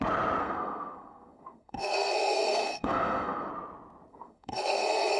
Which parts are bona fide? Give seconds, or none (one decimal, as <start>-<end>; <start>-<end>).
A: 0.0-0.4; 3.5-4.1